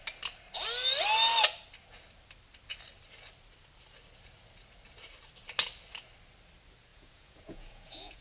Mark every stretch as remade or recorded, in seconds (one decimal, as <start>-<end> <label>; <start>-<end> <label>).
0.0-6.9 recorded; 6.9-8.2 remade